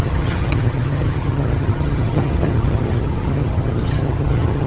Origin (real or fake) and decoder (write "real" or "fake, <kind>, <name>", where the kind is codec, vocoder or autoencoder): fake, vocoder, HiFi-GAN